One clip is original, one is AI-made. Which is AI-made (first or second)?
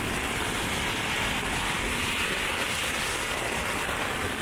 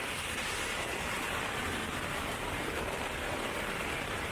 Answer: second